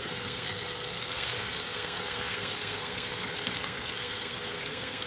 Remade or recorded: remade